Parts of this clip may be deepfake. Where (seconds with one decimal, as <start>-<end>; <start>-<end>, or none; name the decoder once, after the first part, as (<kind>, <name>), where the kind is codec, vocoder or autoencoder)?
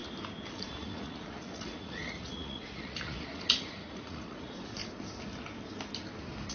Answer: 0.5-4.8 (vocoder, Vocos)